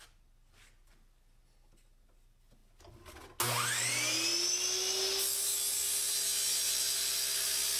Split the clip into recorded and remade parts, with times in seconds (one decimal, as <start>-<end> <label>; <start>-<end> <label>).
0.0-7.8 recorded